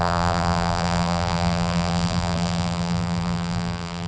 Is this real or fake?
fake